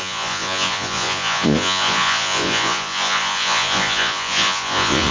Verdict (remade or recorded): remade